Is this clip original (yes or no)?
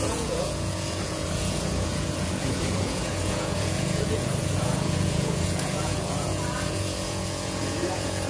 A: no